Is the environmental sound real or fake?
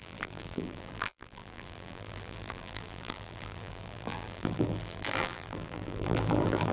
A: fake